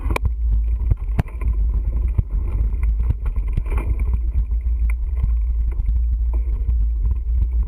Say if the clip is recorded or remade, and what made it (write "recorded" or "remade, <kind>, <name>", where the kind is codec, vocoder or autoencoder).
recorded